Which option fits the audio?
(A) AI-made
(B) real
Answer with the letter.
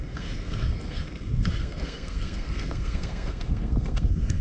A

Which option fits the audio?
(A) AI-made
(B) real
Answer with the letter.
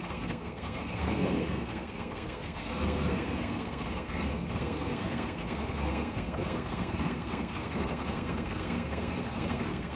A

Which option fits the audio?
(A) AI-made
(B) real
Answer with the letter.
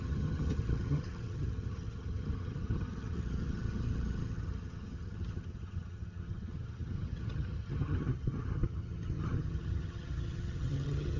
A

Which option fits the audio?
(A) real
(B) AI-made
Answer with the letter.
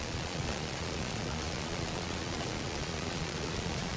B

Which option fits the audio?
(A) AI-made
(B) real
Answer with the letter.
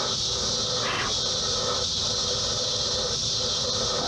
B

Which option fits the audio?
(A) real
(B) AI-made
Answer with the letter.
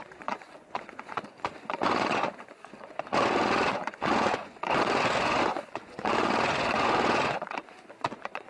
B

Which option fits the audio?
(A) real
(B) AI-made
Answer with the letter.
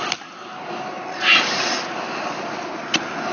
A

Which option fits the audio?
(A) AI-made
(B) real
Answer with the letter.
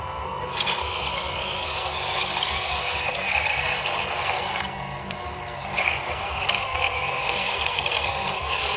A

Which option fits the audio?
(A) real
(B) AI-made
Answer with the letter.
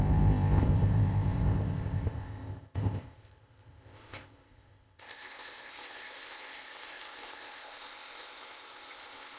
B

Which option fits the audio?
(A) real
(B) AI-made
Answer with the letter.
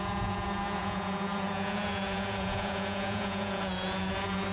B